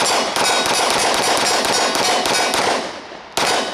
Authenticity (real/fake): real